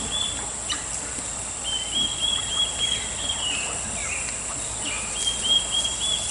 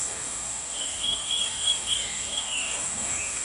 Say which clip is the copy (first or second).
second